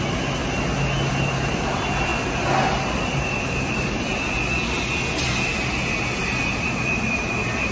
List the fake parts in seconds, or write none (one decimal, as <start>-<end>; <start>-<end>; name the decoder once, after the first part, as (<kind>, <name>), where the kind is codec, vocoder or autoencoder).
0.0-0.4 (vocoder, BigVGAN v2); 1.1-2.1; 3.0-4.1; 6.2-7.7